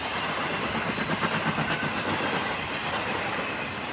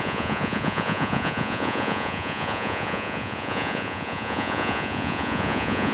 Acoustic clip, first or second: first